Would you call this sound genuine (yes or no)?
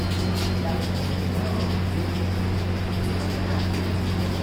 yes